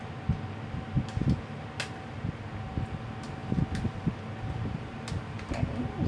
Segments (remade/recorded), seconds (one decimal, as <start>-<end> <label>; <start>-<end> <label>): 0.0-6.1 recorded